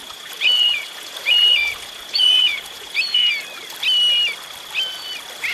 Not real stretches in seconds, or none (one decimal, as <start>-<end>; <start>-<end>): 0.0-3.3